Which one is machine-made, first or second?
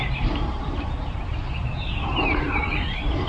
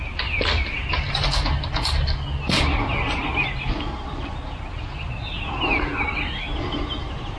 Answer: first